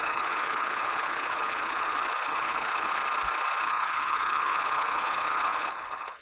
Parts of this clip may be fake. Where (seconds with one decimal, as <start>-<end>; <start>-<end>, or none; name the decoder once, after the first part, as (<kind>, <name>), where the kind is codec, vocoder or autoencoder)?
0.0-3.0 (codec, HILCodec); 3.6-6.2